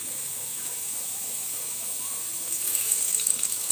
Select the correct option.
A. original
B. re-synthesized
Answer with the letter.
B